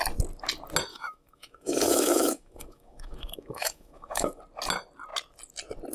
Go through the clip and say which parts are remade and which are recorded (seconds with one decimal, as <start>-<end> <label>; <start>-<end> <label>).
0.0-0.9 recorded; 0.9-4.4 remade; 4.4-5.9 recorded